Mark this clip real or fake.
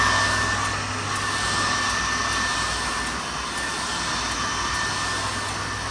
real